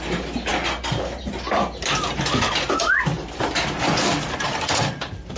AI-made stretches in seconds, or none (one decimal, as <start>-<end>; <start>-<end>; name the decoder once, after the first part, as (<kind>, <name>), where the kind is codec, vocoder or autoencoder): none